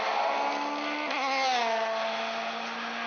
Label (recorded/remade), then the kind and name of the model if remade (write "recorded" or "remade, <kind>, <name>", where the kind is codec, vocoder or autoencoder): recorded